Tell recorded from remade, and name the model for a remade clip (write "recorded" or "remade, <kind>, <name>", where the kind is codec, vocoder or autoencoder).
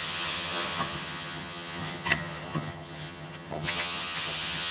remade, vocoder, HiFi-GAN